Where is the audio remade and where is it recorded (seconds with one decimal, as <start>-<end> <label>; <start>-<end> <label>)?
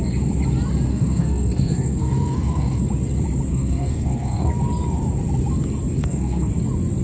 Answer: 0.0-0.9 recorded; 0.9-2.8 remade; 2.8-3.5 recorded; 3.5-4.5 remade; 4.5-6.0 recorded; 6.0-6.5 remade; 6.5-7.0 recorded